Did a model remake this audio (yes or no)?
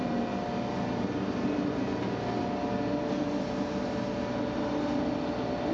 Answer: no